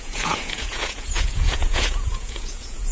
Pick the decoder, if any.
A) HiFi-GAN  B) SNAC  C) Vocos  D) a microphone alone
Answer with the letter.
C